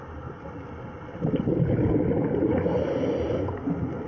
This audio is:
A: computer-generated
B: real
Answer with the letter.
B